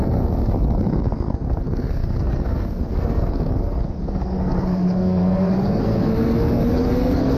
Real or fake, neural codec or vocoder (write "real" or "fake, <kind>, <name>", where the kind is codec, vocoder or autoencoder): fake, codec, SNAC